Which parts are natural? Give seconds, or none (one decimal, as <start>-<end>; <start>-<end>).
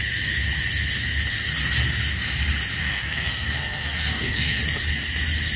0.0-2.8; 4.6-5.6